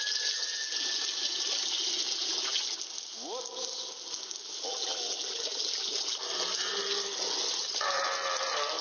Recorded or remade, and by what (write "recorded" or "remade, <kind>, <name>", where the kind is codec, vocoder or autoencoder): recorded